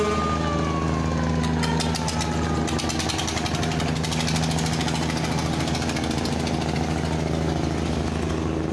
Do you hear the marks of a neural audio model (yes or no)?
no